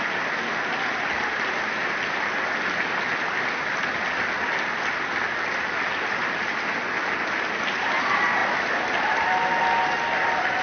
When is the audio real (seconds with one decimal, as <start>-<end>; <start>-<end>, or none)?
0.0-10.6